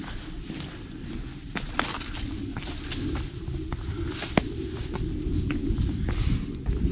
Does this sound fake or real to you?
real